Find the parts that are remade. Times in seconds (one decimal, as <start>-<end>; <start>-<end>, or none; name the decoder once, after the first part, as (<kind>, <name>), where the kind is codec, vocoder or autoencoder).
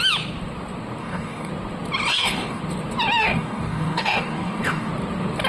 1.0-1.5 (codec, DAC); 2.1-2.6; 3.2-4.9